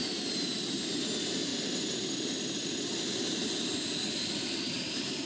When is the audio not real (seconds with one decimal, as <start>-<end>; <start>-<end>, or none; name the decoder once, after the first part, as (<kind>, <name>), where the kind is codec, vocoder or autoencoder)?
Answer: 0.0-1.5 (vocoder, BigVGAN v2); 4.7-5.3

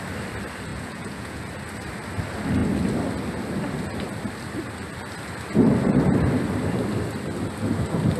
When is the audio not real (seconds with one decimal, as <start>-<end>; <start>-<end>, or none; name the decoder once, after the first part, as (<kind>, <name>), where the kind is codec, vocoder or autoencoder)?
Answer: 0.7-1.5 (vocoder, Vocos)